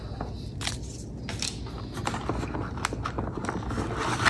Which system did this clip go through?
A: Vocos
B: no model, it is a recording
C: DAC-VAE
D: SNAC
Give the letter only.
B